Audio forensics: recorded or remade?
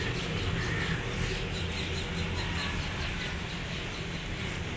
recorded